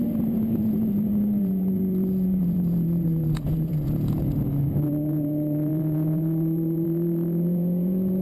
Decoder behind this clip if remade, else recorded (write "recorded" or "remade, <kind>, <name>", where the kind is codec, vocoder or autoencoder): remade, vocoder, Vocos